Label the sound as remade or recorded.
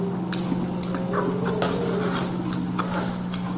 recorded